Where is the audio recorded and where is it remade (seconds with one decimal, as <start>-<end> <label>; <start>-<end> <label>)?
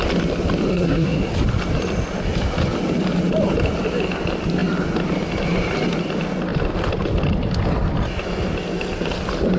0.0-0.7 recorded; 0.7-1.2 remade; 1.2-9.6 recorded